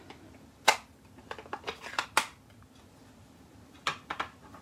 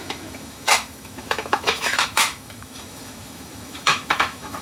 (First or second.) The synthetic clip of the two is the second